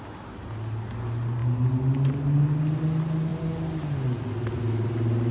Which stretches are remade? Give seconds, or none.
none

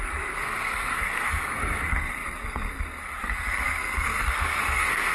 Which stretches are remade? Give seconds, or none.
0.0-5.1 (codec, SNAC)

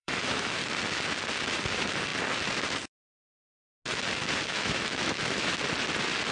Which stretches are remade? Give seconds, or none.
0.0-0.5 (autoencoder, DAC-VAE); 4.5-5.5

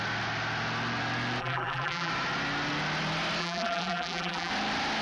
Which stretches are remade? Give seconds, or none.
1.4-2.1 (vocoder, BigVGAN v2); 3.4-4.5